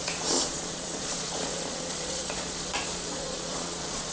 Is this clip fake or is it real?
fake